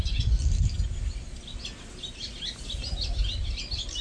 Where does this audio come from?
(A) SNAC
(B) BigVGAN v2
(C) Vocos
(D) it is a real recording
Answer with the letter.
D